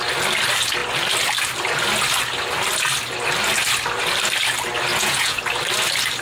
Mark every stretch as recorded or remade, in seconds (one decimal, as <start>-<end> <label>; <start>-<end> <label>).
0.0-4.9 recorded; 4.9-5.4 remade; 5.4-6.2 recorded